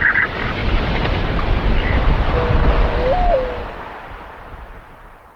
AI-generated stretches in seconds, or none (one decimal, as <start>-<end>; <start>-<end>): 0.0-0.6; 3.8-5.4